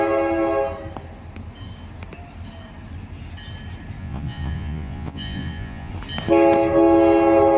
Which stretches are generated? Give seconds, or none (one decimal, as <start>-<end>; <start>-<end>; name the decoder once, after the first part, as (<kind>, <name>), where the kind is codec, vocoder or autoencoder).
4.0-5.9 (vocoder, Vocos)

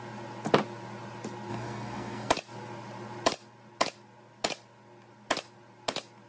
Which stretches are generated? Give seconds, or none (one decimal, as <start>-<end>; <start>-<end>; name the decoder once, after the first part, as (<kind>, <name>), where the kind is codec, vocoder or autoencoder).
1.5-2.3 (codec, SNAC)

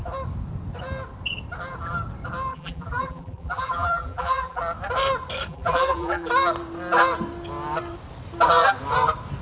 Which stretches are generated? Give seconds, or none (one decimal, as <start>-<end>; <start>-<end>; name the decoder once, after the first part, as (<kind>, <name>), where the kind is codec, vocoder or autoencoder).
2.5-4.6 (vocoder, BigVGAN v2); 5.5-6.3

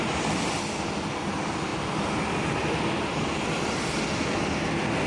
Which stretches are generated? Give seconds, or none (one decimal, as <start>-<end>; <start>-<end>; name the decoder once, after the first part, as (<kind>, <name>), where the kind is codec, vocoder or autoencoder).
none

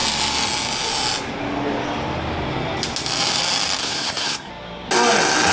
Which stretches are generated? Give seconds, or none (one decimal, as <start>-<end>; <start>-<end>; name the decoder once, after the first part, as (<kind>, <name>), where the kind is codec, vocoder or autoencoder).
3.8-4.5 (codec, SNAC)

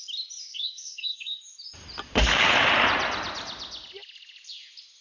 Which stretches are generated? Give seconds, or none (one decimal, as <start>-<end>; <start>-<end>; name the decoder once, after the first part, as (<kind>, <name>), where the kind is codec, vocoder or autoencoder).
0.5-1.4 (codec, SNAC)

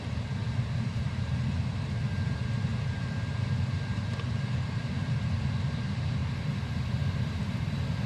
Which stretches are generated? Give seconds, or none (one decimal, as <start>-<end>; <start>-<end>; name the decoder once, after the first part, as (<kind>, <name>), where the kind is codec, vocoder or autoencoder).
0.4-5.2 (vocoder, BigVGAN v2)

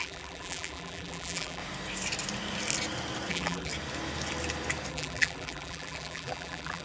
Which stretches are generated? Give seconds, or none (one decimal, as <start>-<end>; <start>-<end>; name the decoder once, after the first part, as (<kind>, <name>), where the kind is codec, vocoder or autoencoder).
0.0-1.6 (vocoder, BigVGAN v2); 3.3-3.7; 4.9-6.8